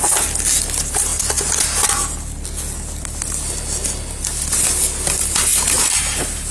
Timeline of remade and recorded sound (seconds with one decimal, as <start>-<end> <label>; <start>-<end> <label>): 0.0-5.5 recorded; 5.5-6.5 remade